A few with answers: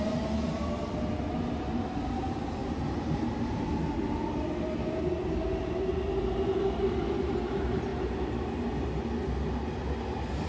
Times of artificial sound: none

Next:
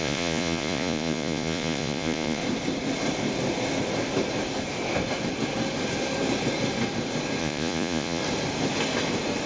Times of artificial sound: 0.0-2.4 (vocoder, Vocos); 7.4-8.2

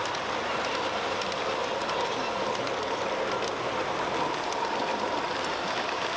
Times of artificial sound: none